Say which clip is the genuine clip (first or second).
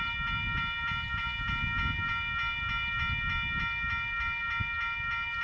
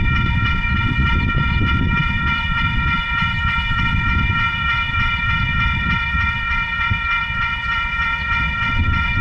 first